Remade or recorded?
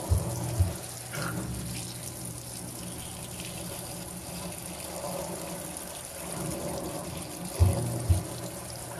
recorded